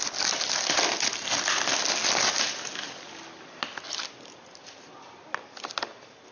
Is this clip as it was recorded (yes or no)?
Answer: yes